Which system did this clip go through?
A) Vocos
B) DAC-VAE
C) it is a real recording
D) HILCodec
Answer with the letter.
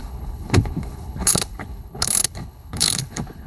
D